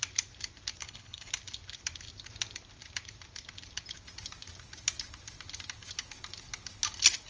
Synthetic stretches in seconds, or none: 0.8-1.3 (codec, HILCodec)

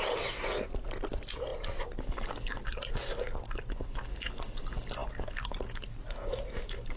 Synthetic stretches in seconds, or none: none

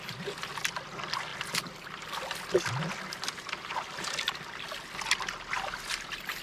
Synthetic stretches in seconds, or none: none

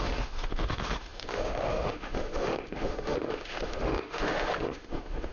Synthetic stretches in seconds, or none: 0.0-5.3 (autoencoder, DAC-VAE)